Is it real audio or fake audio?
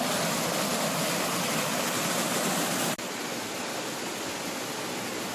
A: real